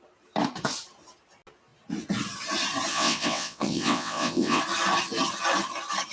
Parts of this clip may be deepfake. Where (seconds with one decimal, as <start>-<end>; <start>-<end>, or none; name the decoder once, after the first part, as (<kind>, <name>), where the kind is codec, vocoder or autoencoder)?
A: 2.9-4.6 (vocoder, WaveNeXt)

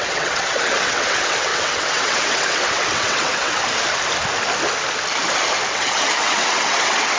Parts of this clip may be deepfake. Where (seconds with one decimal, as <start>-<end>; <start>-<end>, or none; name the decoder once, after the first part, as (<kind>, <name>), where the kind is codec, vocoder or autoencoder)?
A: 0.0-3.6 (vocoder, WaveNeXt); 5.7-7.2

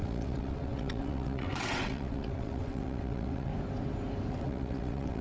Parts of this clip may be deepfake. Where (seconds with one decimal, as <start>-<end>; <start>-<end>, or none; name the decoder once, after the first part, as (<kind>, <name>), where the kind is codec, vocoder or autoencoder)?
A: 0.0-3.5 (vocoder, WaveNeXt); 4.3-5.2

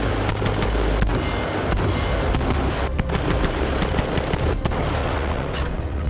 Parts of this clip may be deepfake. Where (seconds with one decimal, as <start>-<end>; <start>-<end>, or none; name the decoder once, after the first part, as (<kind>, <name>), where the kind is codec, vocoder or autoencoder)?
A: 5.0-6.1 (vocoder, WaveNeXt)

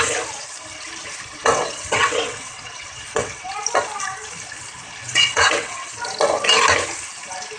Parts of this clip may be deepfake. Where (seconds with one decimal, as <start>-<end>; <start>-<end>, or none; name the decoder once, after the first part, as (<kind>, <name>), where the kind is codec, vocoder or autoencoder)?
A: 1.3-3.5 (vocoder, WaveNeXt); 5.0-5.9

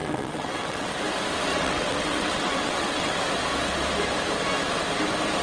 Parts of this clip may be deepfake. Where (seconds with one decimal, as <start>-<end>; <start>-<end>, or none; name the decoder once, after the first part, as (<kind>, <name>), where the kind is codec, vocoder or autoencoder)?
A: 0.0-0.9 (vocoder, WaveNeXt); 1.5-3.1